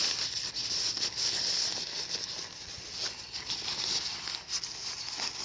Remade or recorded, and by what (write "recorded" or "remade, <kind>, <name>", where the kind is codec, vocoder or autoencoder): recorded